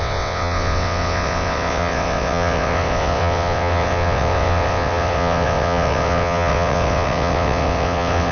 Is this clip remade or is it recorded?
remade